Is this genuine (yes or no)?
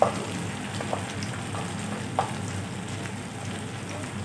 yes